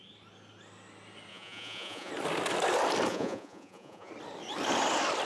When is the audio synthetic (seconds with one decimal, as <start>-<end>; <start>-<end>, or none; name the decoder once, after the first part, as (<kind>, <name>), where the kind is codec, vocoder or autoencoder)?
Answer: 1.3-2.1 (vocoder, Vocos); 3.1-4.1